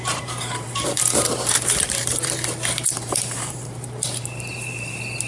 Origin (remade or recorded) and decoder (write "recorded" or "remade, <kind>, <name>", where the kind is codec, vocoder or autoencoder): remade, vocoder, BigVGAN v2